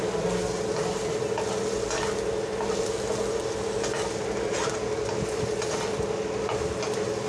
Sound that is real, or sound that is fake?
real